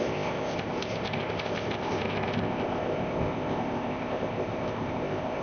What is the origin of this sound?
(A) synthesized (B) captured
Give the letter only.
A